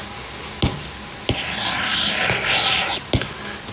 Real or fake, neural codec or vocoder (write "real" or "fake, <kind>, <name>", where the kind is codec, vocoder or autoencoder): real